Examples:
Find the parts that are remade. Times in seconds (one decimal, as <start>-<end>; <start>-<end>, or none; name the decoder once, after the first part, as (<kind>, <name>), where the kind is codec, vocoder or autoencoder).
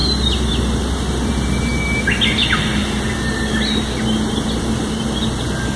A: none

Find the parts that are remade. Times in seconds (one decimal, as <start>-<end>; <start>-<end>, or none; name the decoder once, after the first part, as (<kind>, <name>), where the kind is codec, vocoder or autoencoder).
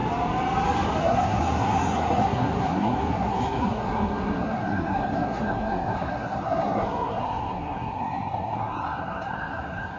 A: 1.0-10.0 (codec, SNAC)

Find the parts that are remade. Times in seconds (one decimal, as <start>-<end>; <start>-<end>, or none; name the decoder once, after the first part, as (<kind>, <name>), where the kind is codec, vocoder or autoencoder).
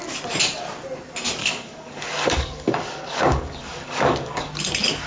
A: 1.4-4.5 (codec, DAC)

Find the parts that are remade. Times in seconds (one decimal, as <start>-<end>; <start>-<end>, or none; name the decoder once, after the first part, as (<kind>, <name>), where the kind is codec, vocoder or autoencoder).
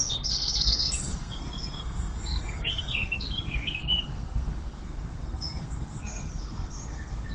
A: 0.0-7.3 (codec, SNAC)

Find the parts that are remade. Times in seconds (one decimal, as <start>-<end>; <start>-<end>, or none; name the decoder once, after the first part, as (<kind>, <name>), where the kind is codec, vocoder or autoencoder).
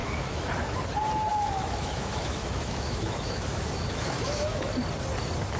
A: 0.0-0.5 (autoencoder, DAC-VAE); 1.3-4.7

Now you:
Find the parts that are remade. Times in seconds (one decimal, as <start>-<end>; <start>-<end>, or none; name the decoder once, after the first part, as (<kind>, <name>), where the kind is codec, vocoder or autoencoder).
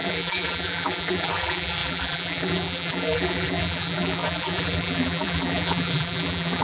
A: 0.0-6.6 (vocoder, BigVGAN v2)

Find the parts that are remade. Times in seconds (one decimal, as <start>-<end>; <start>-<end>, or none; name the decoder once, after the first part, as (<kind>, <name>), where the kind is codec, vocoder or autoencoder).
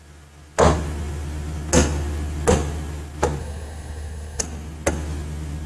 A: 3.4-4.4 (codec, SNAC)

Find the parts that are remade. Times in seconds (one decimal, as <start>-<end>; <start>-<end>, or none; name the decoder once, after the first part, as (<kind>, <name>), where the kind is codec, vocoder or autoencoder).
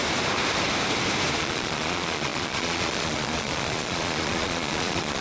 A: 1.4-5.2 (vocoder, Vocos)